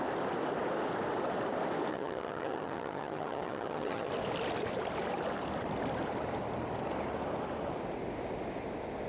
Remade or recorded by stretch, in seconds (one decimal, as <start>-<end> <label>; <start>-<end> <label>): 0.0-1.9 recorded; 1.9-4.1 remade; 4.1-9.1 recorded